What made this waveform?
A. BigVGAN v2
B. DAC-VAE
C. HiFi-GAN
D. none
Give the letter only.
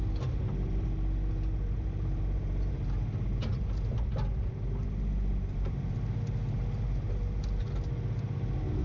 D